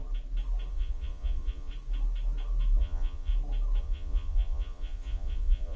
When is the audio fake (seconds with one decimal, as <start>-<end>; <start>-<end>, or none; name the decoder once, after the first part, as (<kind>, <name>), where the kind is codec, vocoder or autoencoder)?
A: 0.7-1.7 (vocoder, Vocos); 2.8-3.3; 3.8-5.8